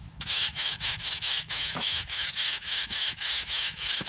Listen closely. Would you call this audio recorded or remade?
remade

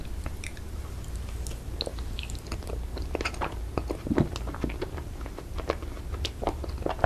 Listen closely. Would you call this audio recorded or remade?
recorded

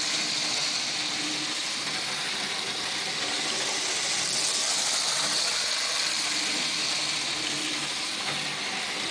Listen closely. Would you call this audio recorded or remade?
recorded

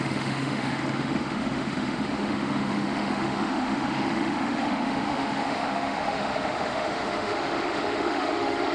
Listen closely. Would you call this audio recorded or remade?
remade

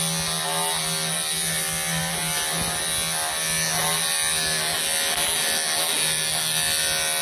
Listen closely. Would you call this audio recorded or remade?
recorded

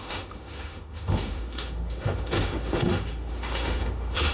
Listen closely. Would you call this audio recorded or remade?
remade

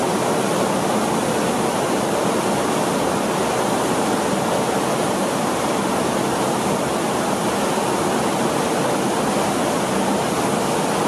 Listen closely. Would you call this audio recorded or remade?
recorded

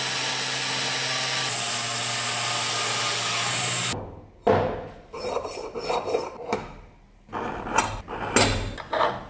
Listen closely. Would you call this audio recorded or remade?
recorded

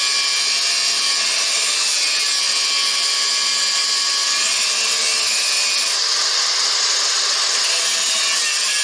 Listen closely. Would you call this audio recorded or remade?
recorded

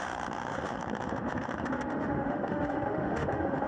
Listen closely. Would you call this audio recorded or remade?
remade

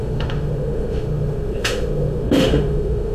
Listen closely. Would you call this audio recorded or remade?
remade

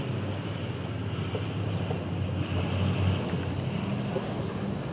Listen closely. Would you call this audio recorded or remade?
recorded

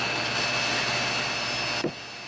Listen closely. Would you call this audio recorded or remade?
recorded